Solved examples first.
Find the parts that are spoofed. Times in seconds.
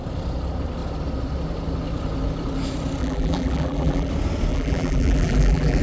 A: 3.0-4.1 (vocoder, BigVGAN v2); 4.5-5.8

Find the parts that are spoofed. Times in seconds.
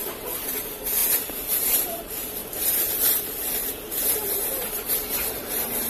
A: 0.0-3.6 (vocoder, BigVGAN v2); 4.1-5.9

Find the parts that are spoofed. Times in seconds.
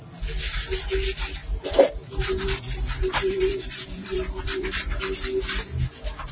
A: 1.4-5.0 (vocoder, BigVGAN v2)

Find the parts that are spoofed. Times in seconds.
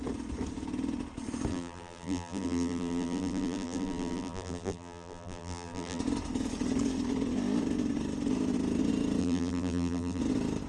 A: 1.5-6.0 (vocoder, BigVGAN v2); 9.2-10.2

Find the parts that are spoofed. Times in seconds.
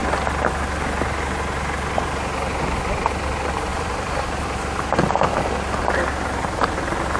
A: 3.7-4.9 (vocoder, BigVGAN v2)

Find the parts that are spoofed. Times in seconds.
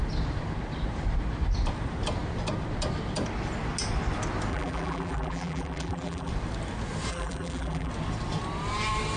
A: 4.5-6.3 (vocoder, BigVGAN v2); 7.1-7.9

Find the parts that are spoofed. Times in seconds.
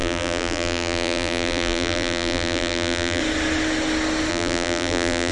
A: 0.0-3.2 (vocoder, BigVGAN v2); 4.3-5.3